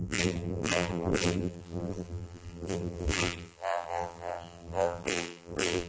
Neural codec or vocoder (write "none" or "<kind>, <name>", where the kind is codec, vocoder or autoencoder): vocoder, BigVGAN v2